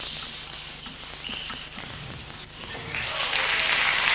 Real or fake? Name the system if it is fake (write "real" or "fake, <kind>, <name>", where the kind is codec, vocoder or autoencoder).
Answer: real